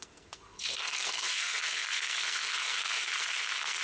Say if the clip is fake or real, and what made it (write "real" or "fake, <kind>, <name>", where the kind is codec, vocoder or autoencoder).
fake, codec, SNAC